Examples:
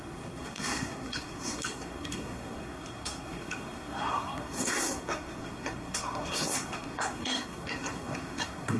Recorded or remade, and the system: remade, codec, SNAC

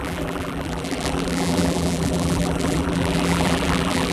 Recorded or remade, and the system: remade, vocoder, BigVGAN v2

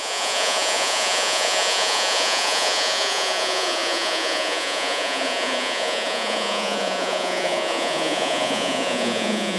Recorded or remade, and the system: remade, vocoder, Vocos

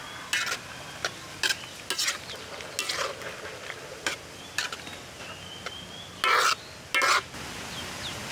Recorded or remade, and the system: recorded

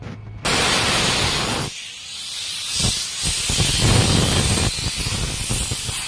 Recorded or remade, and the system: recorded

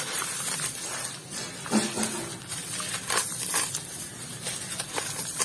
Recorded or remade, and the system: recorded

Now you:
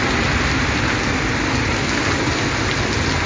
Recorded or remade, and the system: recorded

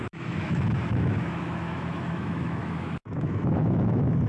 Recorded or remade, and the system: remade, autoencoder, DAC-VAE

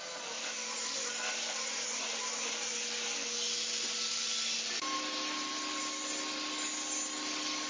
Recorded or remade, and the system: recorded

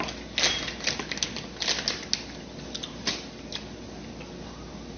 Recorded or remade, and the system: recorded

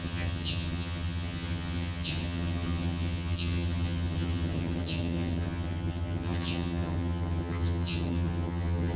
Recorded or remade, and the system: remade, vocoder, HiFi-GAN